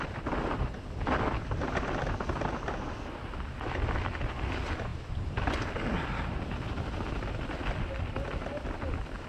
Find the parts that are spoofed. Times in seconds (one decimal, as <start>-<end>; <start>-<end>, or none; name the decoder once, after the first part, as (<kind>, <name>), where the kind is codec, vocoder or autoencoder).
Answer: none